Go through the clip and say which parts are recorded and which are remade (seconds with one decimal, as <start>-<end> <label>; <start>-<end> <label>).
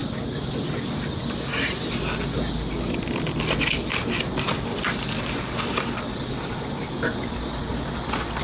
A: 0.0-8.4 recorded